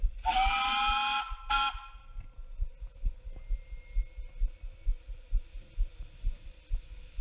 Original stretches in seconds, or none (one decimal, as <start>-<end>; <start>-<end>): 0.0-7.2